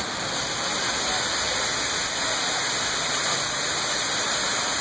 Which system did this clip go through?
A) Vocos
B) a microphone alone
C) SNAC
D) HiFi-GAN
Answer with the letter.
B